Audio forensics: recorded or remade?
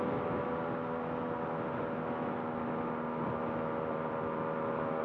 recorded